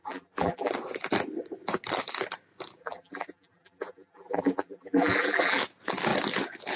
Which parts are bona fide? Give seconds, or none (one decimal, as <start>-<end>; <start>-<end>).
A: 0.7-2.8; 5.6-6.8